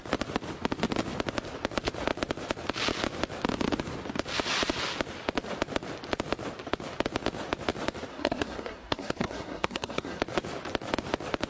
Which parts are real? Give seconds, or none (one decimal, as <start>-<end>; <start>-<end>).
0.0-8.1; 10.2-11.5